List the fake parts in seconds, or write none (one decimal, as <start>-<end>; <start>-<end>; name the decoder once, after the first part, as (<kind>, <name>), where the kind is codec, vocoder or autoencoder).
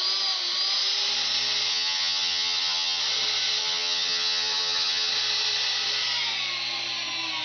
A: 1.7-3.0 (vocoder, HiFi-GAN); 3.6-5.1